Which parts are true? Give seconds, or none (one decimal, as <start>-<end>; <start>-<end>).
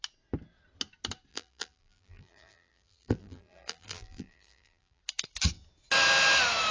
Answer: 0.0-1.3; 5.0-6.7